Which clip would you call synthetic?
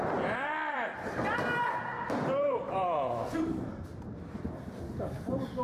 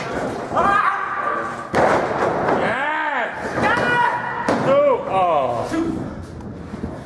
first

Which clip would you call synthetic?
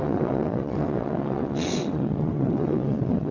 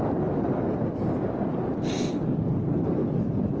first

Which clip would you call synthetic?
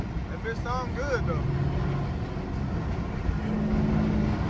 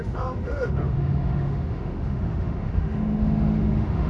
second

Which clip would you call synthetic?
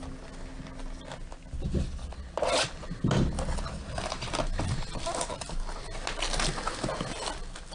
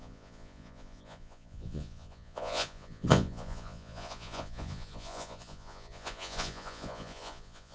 second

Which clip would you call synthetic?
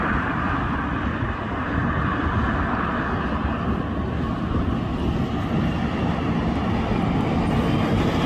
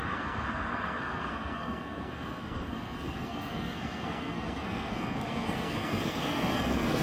second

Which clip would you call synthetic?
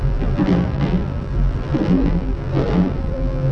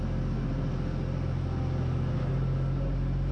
first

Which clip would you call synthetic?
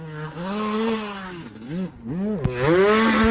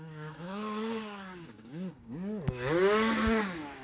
second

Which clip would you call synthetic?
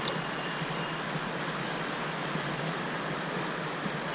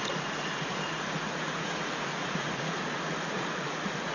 second